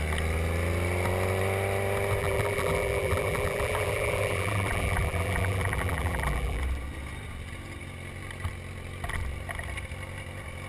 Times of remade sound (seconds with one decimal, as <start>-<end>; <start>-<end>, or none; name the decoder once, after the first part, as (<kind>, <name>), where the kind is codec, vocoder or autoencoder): 2.2-6.6 (vocoder, BigVGAN v2)